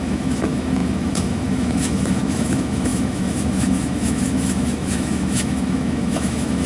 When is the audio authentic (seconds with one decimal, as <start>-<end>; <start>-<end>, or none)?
none